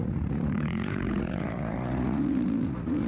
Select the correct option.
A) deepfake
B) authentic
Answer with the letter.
A